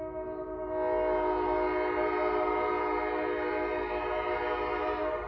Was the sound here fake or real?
real